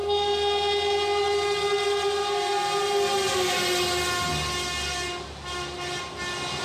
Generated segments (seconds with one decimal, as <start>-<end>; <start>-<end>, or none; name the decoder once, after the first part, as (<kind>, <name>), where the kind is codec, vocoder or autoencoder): none